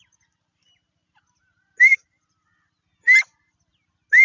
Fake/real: real